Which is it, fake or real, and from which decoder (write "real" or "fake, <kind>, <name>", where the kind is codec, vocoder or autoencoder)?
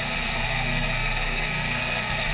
fake, codec, SNAC